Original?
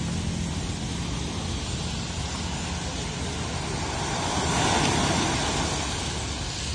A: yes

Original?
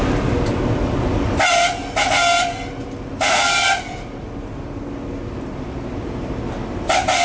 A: yes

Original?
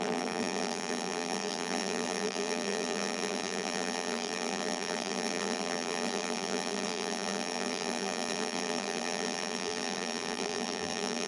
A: no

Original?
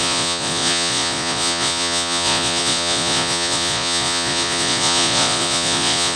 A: no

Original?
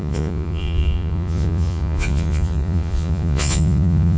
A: no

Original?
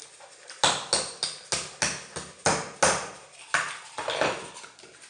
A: yes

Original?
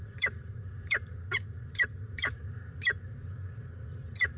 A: no